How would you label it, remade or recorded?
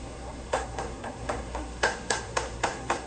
remade